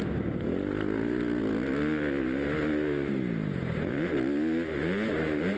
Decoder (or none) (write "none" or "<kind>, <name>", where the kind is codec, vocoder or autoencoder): none